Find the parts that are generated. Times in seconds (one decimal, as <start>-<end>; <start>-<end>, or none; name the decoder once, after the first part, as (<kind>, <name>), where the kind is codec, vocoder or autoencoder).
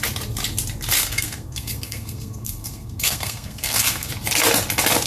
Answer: 1.0-4.1 (codec, SNAC)